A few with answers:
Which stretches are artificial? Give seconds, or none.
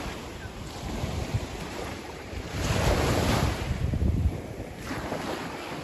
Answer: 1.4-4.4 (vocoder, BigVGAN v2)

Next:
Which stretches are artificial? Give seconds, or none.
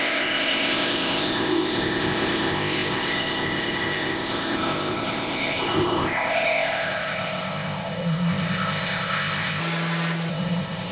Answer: 0.0-9.6 (codec, ZipCodec); 10.3-10.9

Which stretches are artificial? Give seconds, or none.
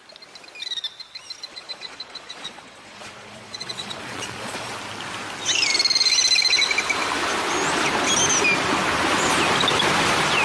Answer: 1.5-4.7 (vocoder, Vocos)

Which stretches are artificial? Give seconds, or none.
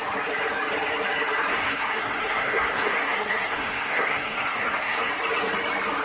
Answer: 1.5-5.1 (codec, SNAC)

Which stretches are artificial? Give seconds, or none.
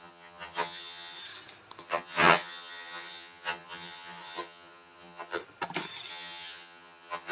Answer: 0.0-1.2 (vocoder, HiFi-GAN); 1.8-5.4; 6.1-7.3